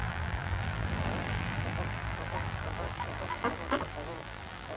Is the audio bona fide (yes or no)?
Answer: no